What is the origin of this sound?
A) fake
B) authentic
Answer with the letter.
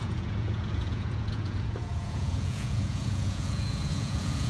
A